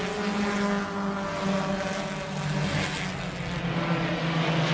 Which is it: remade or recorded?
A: recorded